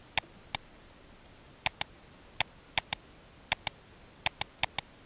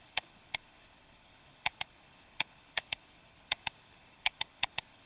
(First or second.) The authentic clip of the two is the first